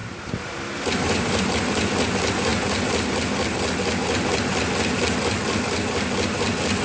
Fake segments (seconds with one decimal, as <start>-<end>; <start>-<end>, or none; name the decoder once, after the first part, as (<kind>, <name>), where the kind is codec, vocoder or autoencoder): 0.0-1.5 (vocoder, BigVGAN v2)